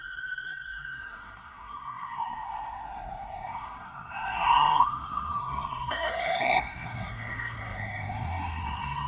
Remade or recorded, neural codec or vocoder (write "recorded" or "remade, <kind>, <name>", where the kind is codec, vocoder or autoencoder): remade, codec, SNAC